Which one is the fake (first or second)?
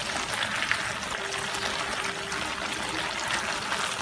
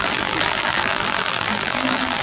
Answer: second